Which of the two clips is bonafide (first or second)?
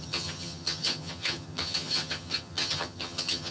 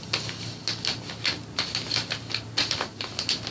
second